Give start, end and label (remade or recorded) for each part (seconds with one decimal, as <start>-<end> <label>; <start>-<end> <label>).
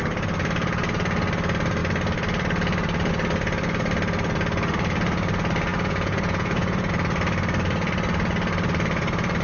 0.0-5.7 recorded; 5.7-6.9 remade; 6.9-9.4 recorded